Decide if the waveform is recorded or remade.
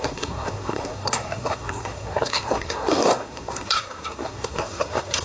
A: remade